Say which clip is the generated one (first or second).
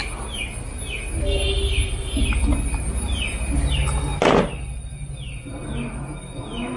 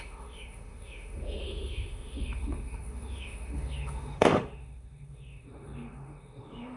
second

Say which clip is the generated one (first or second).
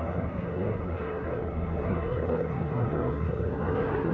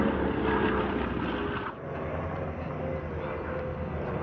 first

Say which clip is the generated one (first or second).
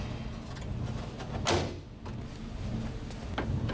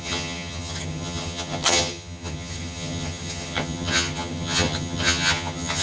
second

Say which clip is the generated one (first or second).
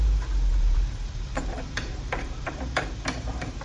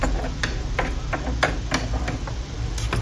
first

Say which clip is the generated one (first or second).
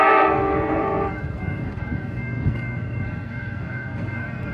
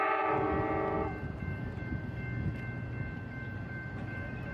first